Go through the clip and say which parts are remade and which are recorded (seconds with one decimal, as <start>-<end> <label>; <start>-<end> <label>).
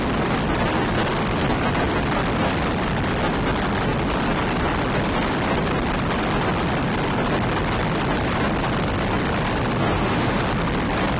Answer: 0.0-9.8 recorded; 9.8-10.4 remade; 10.4-11.2 recorded